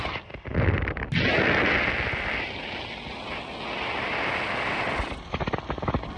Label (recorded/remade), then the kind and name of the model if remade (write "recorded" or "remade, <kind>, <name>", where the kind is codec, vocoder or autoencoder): recorded